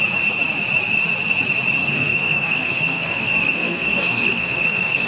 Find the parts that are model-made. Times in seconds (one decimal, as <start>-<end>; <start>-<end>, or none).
1.8-5.1